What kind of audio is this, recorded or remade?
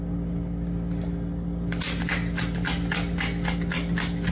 recorded